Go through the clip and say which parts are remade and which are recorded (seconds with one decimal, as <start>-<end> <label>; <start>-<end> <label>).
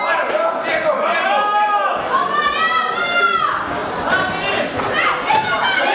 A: 0.0-5.9 recorded